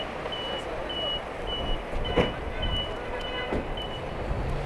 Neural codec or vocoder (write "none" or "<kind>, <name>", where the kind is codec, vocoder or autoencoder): none